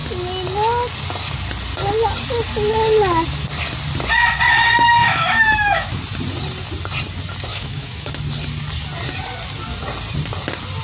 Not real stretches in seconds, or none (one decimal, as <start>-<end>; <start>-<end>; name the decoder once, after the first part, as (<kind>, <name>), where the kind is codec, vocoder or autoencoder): 5.0-6.0 (autoencoder, DAC-VAE); 7.5-8.1